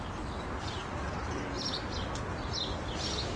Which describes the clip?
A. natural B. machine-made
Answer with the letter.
A